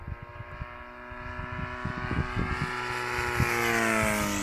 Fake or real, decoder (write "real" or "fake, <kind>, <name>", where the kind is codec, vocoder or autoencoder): real